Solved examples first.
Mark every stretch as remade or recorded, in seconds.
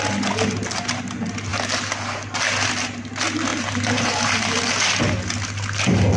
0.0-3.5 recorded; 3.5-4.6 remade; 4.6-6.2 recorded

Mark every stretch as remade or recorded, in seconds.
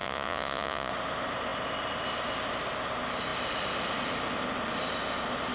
0.0-0.9 remade; 0.9-5.5 recorded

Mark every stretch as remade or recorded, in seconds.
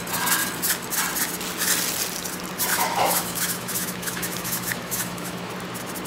0.0-2.7 recorded; 2.7-5.5 remade; 5.5-6.1 recorded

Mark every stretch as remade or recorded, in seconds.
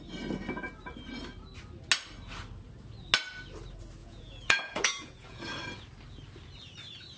0.0-4.0 recorded; 4.0-5.4 remade; 5.4-7.2 recorded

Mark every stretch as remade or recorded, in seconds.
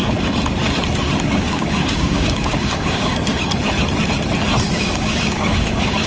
0.0-1.3 recorded; 1.3-3.1 remade; 3.1-4.8 recorded; 4.8-6.1 remade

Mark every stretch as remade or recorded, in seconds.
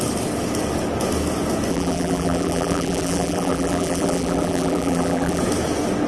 0.0-1.7 recorded; 1.7-5.4 remade; 5.4-6.1 recorded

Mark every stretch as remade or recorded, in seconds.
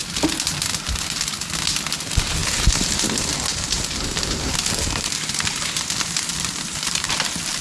0.0-2.4 recorded; 2.4-3.0 remade; 3.0-3.5 recorded; 3.5-4.6 remade; 4.6-7.6 recorded